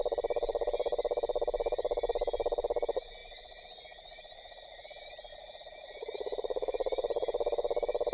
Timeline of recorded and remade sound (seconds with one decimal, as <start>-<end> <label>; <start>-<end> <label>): 0.0-8.1 remade